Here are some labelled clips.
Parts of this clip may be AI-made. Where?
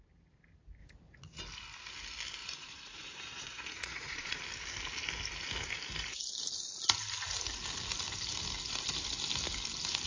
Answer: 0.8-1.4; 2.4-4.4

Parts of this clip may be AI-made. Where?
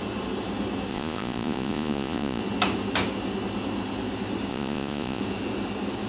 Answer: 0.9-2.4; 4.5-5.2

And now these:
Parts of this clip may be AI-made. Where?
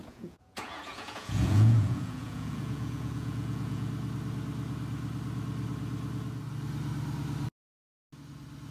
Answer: 0.0-3.9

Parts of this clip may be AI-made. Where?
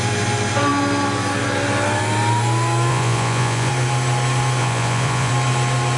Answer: 2.9-3.7; 4.6-5.3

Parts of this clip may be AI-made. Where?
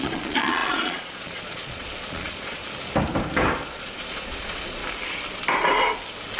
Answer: 0.0-2.6; 3.7-4.8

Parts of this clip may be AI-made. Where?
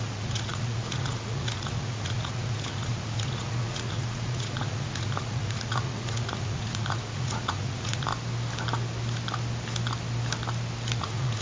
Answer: 0.0-8.1; 11.0-11.4